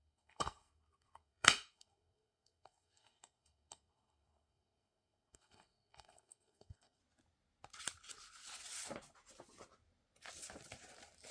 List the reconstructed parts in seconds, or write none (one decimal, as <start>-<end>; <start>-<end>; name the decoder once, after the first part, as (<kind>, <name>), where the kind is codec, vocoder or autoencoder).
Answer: 0.0-7.0 (codec, SNAC)